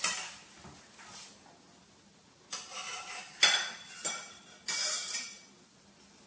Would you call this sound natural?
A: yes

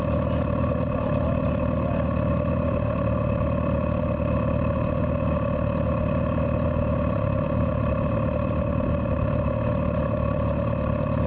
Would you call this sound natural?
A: yes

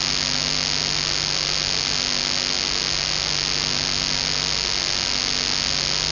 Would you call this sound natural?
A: yes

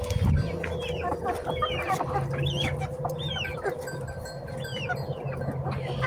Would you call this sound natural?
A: yes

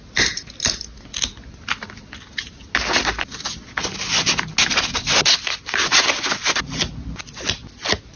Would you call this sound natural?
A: yes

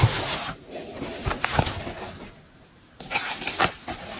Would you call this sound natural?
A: yes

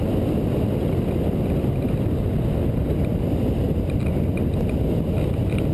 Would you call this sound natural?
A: yes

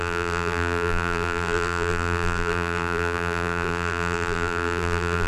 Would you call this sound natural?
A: no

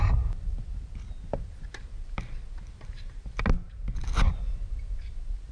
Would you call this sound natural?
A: yes